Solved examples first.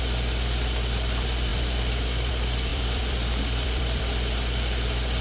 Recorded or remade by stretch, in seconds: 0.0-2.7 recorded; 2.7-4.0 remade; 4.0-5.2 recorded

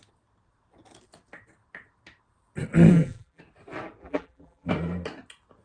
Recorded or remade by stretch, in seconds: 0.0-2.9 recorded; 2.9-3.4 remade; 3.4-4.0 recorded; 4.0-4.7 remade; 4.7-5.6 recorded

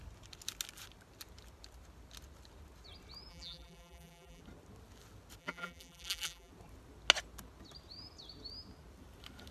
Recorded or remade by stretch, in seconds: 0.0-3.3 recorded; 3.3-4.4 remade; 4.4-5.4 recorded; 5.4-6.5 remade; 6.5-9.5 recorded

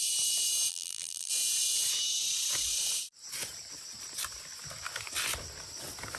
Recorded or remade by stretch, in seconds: 0.0-0.7 recorded; 0.7-1.3 remade; 1.3-6.2 recorded

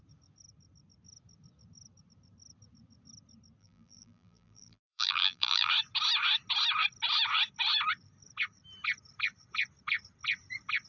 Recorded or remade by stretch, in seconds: 0.0-3.6 recorded; 3.6-5.7 remade; 5.7-10.9 recorded

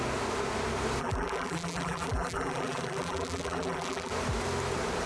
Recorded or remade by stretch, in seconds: 0.0-1.0 recorded; 1.0-4.1 remade; 4.1-5.1 recorded